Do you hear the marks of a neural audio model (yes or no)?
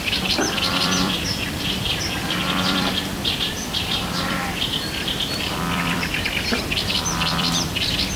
yes